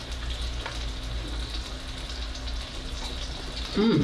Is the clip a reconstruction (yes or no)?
no